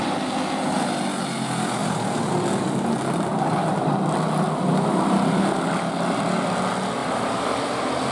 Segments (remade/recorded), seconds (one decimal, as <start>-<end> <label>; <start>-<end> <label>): 0.0-7.0 recorded; 7.0-7.6 remade; 7.6-8.1 recorded

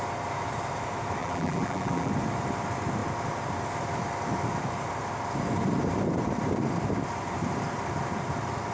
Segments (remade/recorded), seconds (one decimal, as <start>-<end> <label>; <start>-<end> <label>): 0.0-1.2 recorded; 1.2-2.1 remade; 2.1-8.7 recorded